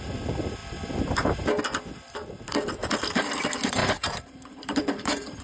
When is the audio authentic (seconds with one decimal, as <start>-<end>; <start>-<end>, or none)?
0.0-2.8; 3.4-3.8